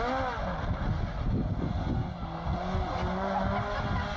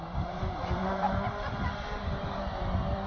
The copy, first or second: second